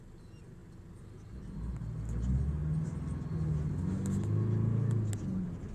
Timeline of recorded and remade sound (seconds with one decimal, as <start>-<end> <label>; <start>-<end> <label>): 0.0-5.7 recorded